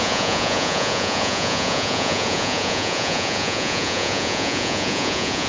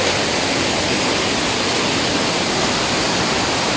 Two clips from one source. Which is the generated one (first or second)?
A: first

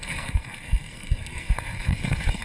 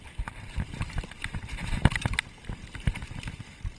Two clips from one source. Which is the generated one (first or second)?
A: first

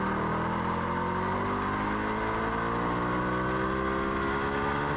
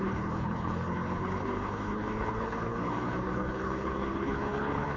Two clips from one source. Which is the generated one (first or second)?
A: second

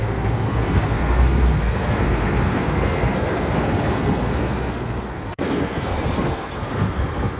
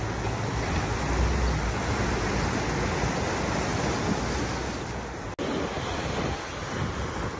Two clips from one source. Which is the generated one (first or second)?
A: first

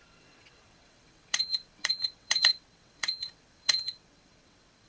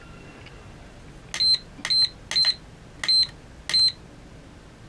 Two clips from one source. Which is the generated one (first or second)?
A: first